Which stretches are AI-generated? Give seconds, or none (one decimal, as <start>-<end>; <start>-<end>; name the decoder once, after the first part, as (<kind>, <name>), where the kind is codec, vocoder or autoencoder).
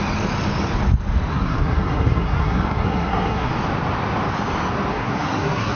1.3-3.5 (codec, SNAC); 4.9-5.8